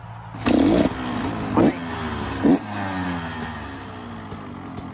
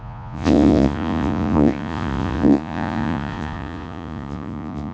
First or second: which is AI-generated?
second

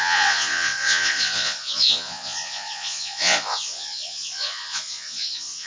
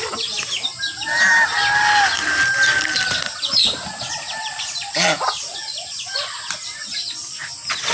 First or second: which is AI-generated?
first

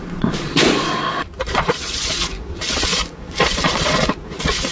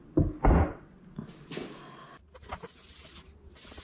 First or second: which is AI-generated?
first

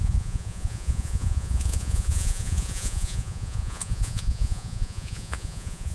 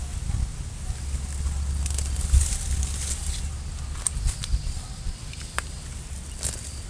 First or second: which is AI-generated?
first